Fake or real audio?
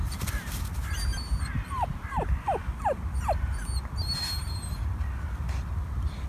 real